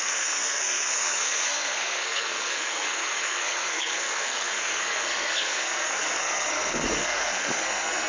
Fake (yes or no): yes